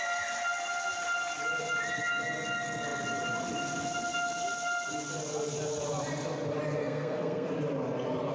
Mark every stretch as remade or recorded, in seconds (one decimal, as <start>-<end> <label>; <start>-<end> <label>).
0.0-6.8 recorded; 6.8-7.5 remade; 7.5-8.3 recorded